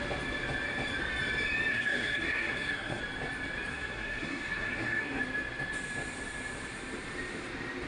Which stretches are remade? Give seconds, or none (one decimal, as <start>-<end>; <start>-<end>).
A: 1.7-3.0; 3.7-5.2

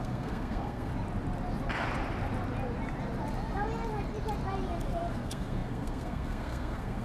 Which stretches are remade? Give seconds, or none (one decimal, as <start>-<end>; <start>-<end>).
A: 0.0-0.9; 5.1-7.0

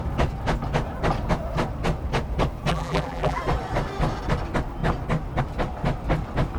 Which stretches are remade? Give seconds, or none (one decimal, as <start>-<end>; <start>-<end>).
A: 2.7-3.4

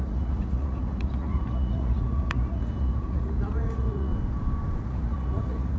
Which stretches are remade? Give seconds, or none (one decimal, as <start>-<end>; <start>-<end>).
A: 0.0-4.1; 4.8-5.8

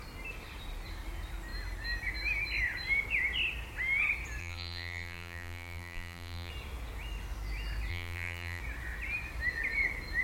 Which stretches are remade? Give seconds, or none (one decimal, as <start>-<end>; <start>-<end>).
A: 4.4-6.5; 7.9-8.6